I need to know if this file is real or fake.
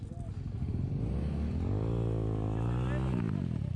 real